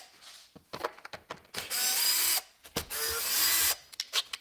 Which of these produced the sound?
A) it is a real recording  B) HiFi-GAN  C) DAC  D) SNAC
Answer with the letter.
A